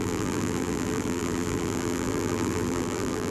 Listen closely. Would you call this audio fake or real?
fake